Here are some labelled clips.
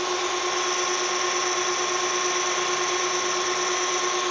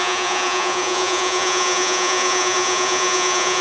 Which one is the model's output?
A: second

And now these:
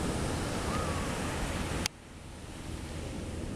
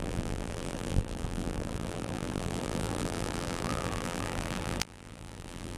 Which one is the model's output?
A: second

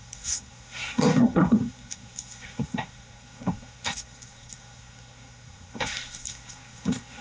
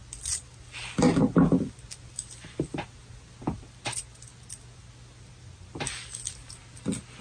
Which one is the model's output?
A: first